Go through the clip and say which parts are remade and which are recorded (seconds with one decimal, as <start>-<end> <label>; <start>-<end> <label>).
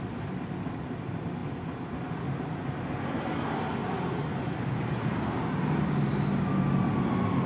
0.0-7.5 recorded